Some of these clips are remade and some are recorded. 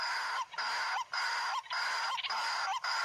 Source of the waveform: recorded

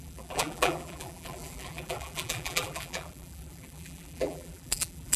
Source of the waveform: remade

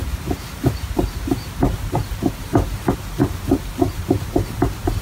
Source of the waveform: remade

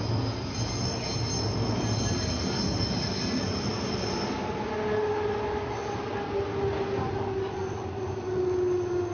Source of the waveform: recorded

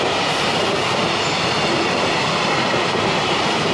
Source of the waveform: recorded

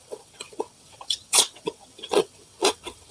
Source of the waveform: remade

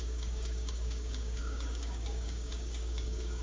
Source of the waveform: remade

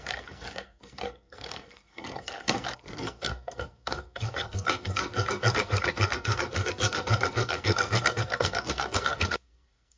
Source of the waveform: remade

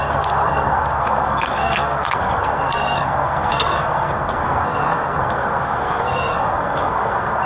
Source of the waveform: remade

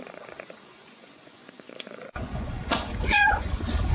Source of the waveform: remade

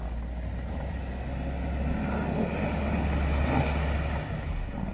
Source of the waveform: recorded